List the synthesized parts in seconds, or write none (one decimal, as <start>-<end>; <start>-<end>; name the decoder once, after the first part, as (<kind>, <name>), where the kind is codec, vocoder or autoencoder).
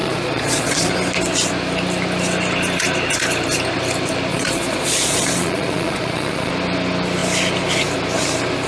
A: 0.0-0.9 (vocoder, Vocos); 4.3-6.5